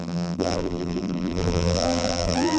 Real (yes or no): no